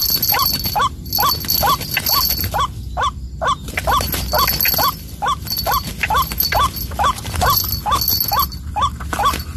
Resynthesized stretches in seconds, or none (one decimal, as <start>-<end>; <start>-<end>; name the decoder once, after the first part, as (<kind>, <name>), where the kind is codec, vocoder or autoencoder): none